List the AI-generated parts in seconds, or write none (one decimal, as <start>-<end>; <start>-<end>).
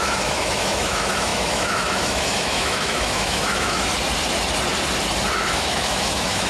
0.0-3.9; 5.5-6.5